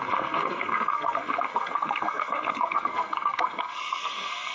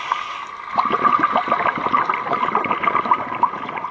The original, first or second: second